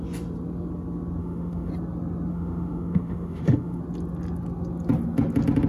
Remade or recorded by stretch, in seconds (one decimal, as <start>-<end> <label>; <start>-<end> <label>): 0.0-1.2 recorded; 1.2-1.7 remade; 1.7-2.3 recorded; 2.3-3.8 remade; 3.8-5.7 recorded